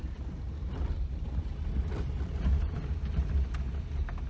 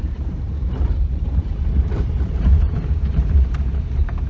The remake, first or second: second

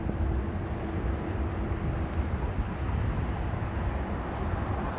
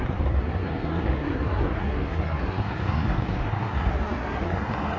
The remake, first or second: second